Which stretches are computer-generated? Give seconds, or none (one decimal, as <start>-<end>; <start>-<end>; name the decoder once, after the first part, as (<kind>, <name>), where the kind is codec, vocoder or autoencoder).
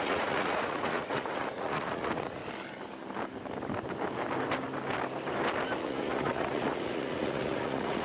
0.0-2.4 (vocoder, Vocos); 5.8-8.0